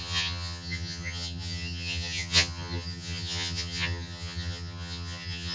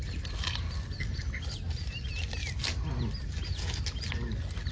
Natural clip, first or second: second